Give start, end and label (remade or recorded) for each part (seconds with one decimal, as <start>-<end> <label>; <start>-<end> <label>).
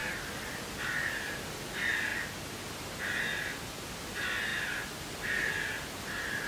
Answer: 0.0-6.5 recorded